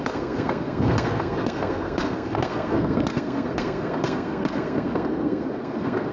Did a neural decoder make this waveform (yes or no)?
yes